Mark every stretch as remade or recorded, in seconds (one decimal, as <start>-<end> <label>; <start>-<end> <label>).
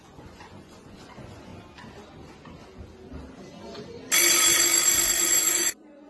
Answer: 0.0-1.5 remade; 1.5-5.2 recorded; 5.2-6.1 remade